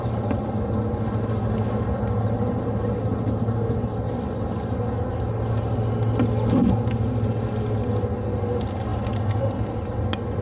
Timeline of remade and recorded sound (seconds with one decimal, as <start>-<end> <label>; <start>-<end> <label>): 0.0-10.4 recorded

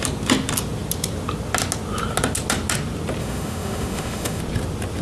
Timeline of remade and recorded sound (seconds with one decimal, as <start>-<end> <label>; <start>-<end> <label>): 0.0-3.2 recorded; 3.2-4.4 remade; 4.4-5.0 recorded

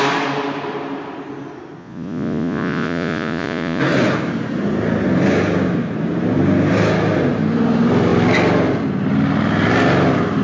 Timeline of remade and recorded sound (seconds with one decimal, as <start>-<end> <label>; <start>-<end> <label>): 0.0-1.8 recorded; 1.8-3.8 remade; 3.8-10.4 recorded

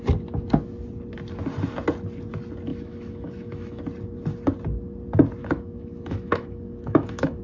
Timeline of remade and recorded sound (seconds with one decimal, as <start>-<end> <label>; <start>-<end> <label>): 0.0-2.7 recorded; 2.7-3.8 remade; 3.8-5.4 recorded; 5.4-7.4 remade